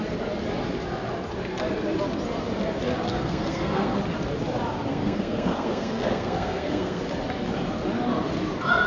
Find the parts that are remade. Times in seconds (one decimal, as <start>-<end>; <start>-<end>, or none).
3.1-4.0; 4.9-7.0